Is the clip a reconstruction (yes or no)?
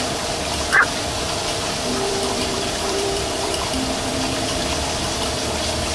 yes